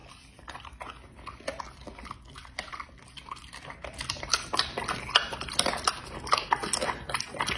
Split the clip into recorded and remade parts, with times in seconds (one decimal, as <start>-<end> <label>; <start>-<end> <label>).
0.0-7.6 recorded